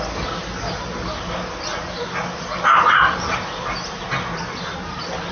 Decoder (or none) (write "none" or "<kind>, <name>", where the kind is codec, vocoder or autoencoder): none